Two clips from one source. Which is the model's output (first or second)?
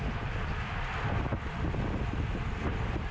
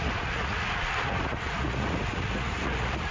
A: second